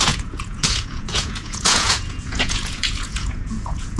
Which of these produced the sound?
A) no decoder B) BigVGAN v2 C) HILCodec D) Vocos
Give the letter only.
D